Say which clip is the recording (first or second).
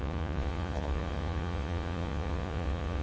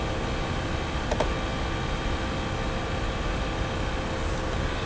second